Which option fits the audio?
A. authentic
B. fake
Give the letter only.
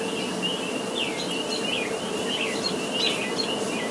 A